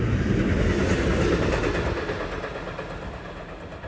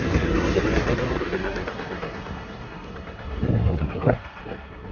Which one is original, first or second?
first